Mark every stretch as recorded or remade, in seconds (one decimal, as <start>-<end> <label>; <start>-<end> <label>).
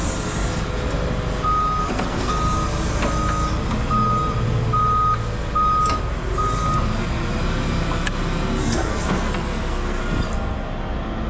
0.0-1.8 recorded; 1.8-2.3 remade; 2.3-8.6 recorded; 8.6-10.0 remade; 10.0-11.3 recorded